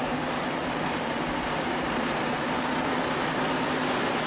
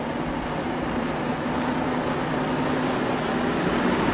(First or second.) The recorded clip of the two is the second